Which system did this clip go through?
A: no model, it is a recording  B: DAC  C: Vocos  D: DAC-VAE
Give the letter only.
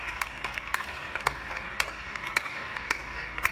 B